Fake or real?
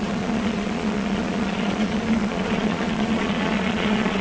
fake